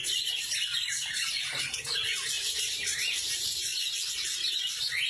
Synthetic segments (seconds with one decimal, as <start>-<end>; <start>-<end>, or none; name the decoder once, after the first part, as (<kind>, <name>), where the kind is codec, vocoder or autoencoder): 0.0-3.7 (vocoder, BigVGAN v2)